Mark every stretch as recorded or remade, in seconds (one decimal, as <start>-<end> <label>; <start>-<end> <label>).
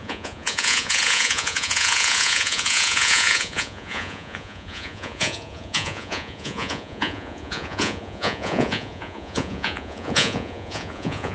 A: 0.0-11.3 remade